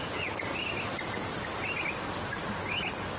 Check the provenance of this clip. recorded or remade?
recorded